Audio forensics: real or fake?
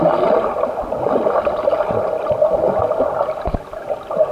real